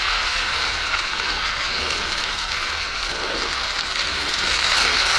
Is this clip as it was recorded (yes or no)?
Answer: no